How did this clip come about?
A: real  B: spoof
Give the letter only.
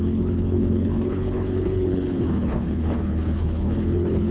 B